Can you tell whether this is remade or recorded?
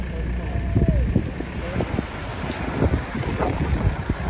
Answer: recorded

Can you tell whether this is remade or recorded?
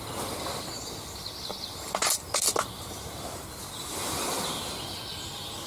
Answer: recorded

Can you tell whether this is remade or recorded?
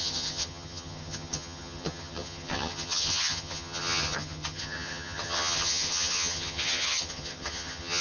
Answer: remade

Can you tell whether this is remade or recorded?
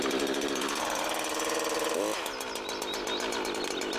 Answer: recorded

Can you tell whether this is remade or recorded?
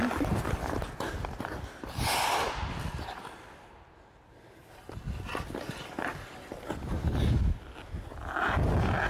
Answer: recorded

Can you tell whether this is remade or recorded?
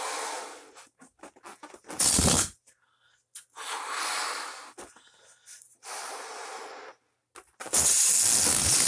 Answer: recorded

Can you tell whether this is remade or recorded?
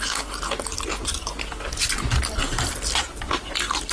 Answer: recorded